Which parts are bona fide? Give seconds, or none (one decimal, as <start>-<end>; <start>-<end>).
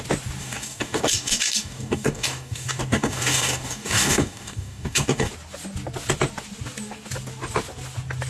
0.0-0.4; 5.3-8.3